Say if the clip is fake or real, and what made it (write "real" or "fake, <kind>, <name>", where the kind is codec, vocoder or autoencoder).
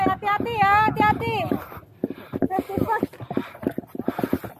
real